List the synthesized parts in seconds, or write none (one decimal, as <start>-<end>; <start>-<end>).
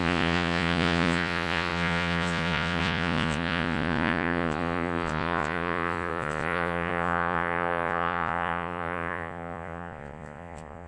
0.0-10.9